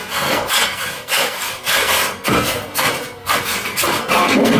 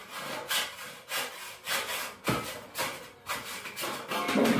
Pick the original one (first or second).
second